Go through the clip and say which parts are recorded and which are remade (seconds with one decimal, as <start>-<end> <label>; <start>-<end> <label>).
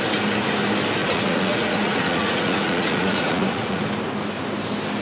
0.0-1.0 recorded; 1.0-3.8 remade; 3.8-5.0 recorded